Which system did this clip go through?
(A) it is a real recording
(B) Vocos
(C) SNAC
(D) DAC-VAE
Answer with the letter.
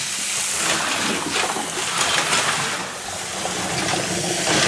A